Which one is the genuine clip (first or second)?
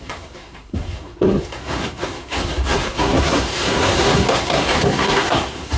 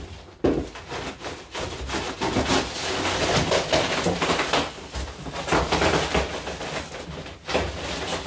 second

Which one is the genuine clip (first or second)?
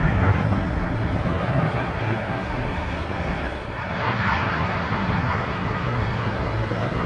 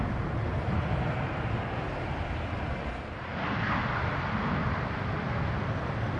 second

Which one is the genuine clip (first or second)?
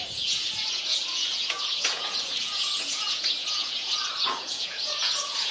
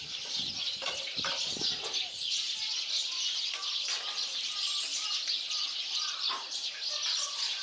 second